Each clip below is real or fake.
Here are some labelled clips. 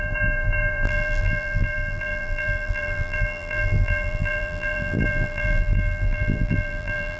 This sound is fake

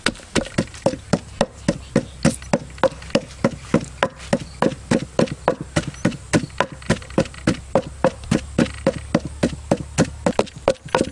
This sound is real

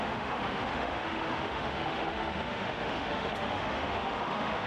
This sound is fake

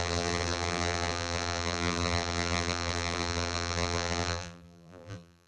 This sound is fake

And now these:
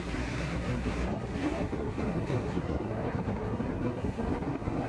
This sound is fake